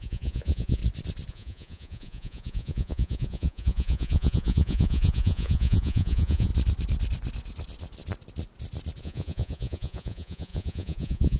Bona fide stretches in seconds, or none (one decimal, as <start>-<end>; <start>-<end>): 0.8-1.3; 6.5-9.0